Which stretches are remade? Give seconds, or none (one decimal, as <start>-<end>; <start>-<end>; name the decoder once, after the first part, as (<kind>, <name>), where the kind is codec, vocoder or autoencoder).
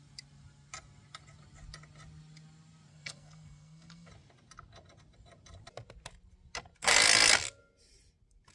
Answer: 2.9-4.1 (codec, SNAC)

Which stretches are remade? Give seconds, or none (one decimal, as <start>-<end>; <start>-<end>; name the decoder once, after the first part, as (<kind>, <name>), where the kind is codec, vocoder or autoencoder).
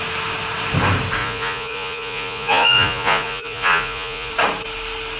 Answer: 1.2-4.3 (vocoder, Vocos)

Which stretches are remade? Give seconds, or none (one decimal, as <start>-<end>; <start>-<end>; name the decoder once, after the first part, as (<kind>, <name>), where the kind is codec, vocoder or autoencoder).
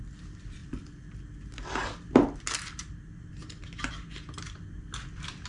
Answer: none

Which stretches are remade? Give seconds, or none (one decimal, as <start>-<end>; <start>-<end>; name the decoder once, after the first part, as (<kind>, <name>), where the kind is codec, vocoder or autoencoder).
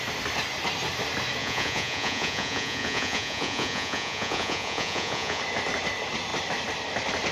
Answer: 1.4-5.4 (vocoder, Vocos)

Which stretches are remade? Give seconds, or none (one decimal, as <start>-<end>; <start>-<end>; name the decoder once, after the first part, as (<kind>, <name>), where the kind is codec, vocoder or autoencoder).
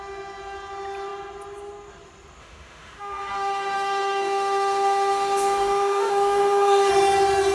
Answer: 2.4-6.9 (autoencoder, DAC-VAE)